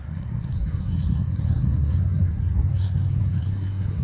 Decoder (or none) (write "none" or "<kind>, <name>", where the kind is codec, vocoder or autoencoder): codec, SNAC